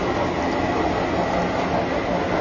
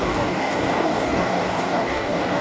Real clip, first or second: first